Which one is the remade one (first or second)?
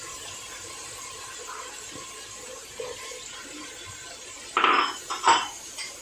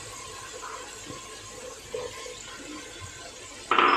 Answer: first